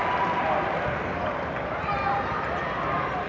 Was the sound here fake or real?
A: real